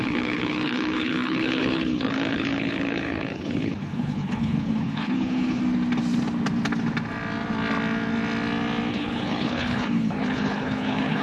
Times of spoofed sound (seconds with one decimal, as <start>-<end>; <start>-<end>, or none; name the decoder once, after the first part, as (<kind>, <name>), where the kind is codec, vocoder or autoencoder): 0.0-5.6 (codec, HILCodec); 8.9-11.2